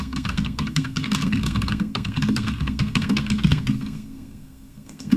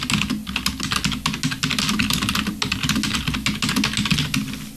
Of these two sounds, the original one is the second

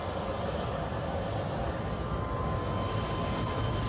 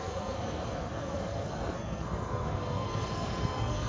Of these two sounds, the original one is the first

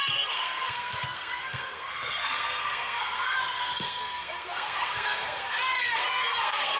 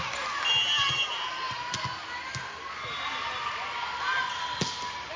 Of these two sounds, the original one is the second